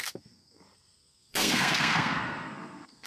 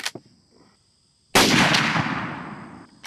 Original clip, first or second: second